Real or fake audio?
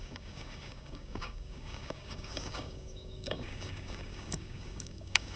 fake